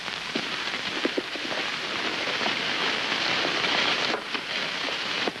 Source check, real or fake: fake